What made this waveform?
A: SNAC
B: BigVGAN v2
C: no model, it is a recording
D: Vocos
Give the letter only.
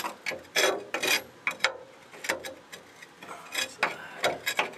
C